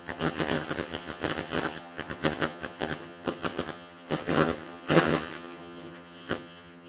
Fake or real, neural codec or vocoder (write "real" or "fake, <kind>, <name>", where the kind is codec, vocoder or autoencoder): fake, vocoder, HiFi-GAN